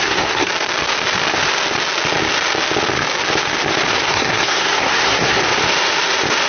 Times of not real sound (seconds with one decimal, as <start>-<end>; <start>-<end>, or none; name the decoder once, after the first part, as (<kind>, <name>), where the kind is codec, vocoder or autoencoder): 0.0-0.5 (codec, SNAC); 3.9-5.4